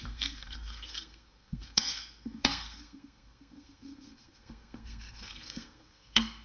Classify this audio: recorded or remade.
remade